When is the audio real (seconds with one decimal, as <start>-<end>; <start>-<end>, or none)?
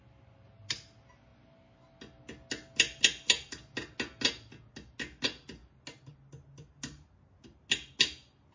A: 0.0-8.5